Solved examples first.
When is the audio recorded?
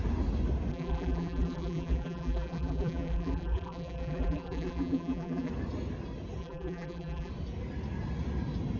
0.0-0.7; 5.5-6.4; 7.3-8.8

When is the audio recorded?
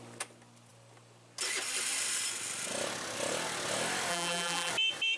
0.0-4.1; 4.7-5.2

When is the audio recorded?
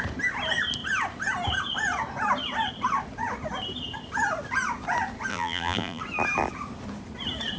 0.0-5.3; 6.0-7.6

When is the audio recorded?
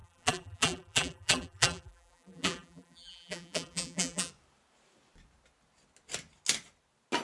4.3-7.2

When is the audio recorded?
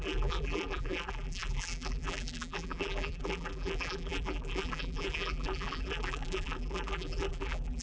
none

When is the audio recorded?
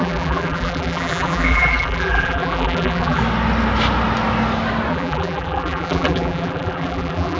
3.2-4.9